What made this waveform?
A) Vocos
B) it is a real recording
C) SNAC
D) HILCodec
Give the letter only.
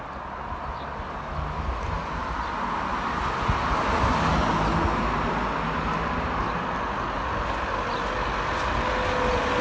B